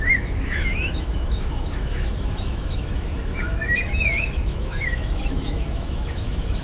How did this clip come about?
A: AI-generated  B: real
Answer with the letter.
A